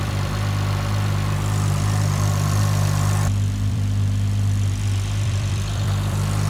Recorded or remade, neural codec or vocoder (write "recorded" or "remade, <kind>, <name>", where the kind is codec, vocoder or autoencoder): remade, vocoder, BigVGAN v2